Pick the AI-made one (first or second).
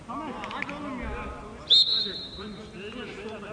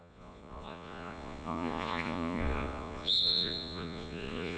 second